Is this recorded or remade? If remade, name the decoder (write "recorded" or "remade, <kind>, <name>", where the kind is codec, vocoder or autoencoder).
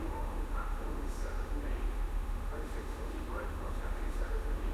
remade, autoencoder, DAC-VAE